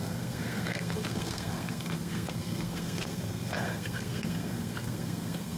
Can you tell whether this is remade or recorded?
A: remade